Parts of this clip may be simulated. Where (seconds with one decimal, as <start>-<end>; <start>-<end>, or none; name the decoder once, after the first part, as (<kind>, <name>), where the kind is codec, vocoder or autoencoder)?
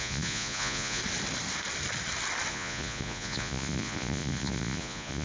0.0-1.0 (vocoder, Vocos); 2.5-5.2